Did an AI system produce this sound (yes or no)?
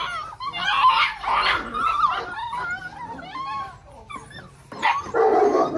no